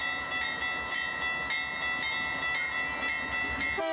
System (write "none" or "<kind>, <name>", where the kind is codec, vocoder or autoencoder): none